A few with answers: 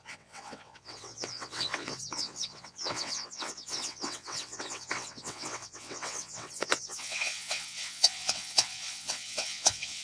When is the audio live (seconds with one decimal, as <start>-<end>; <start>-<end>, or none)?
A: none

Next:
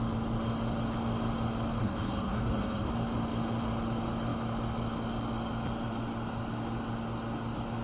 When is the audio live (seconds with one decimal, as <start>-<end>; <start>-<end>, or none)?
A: 0.0-1.8; 2.9-7.8

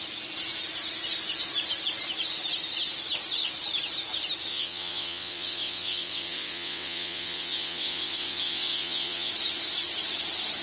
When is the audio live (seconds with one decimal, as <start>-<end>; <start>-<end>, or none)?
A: 0.0-4.5; 9.3-10.6

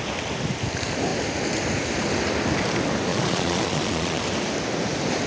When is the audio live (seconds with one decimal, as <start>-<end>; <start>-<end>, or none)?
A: 0.0-3.1; 4.2-5.3